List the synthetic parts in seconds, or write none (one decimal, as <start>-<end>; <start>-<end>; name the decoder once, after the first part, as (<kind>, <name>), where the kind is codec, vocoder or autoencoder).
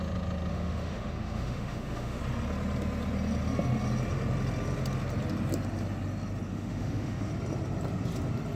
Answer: 0.5-2.2 (autoencoder, DAC-VAE); 6.5-7.3